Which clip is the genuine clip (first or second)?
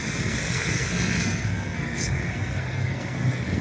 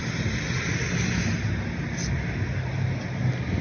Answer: second